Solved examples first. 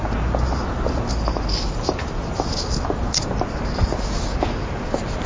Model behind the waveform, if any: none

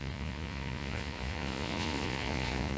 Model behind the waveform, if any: vocoder, Vocos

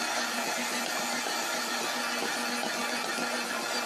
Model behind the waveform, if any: none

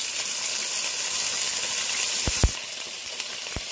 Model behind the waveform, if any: none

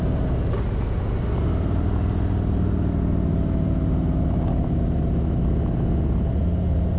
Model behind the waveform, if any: none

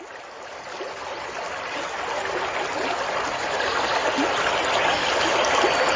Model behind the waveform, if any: none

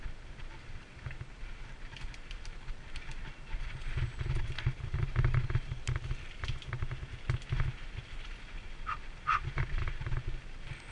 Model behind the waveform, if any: none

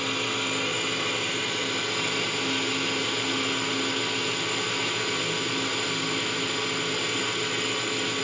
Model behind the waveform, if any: none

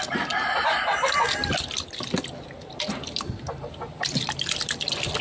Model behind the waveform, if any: none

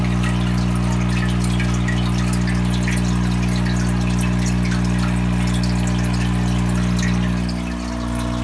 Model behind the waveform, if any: none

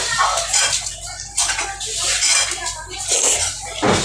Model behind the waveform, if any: none